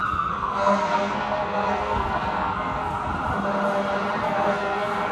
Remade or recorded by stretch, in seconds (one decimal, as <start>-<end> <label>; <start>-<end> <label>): 0.0-3.1 remade; 3.1-4.2 recorded; 4.2-5.1 remade